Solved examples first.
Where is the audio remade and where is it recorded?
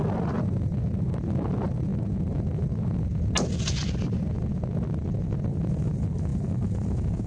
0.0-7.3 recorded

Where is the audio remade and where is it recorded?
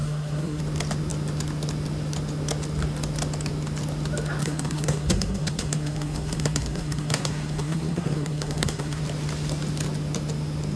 0.0-0.6 remade; 0.6-4.4 recorded; 4.4-9.0 remade; 9.0-10.8 recorded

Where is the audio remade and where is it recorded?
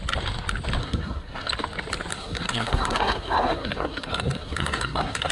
0.0-0.8 recorded; 0.8-1.5 remade; 1.5-2.1 recorded; 2.1-5.3 remade